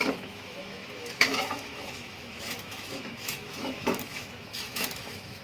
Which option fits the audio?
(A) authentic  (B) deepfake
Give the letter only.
B